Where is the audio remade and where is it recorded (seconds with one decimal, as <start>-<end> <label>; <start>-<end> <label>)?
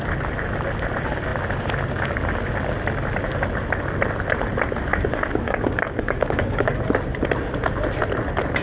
0.0-4.9 recorded; 4.9-6.8 remade; 6.8-8.6 recorded